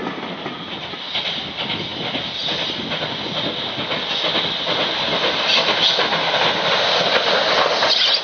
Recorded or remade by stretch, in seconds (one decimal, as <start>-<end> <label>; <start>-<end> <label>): 0.0-8.2 recorded